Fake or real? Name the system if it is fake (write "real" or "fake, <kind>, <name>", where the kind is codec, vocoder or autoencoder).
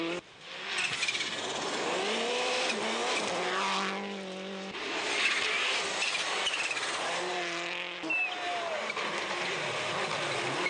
real